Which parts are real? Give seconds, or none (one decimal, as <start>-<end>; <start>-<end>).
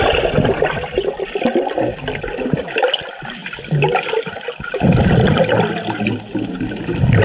0.0-7.2